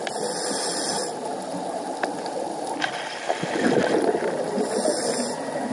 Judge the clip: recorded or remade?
recorded